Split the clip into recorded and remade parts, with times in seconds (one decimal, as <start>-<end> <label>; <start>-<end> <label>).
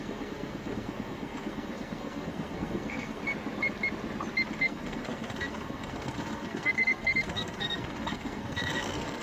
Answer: 0.0-3.2 remade; 3.2-4.6 recorded; 4.6-9.2 remade